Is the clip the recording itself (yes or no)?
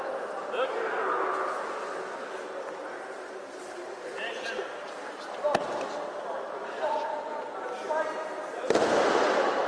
yes